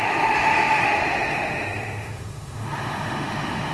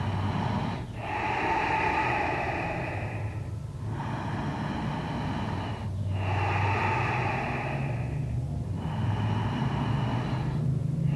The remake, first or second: first